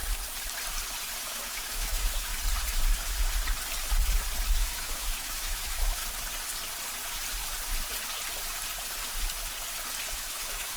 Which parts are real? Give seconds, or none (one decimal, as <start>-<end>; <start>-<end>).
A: 0.0-1.2; 2.3-4.5; 6.0-10.1